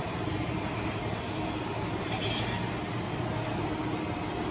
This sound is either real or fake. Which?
real